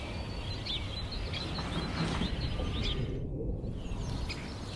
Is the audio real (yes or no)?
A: yes